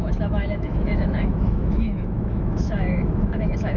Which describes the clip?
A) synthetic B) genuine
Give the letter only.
A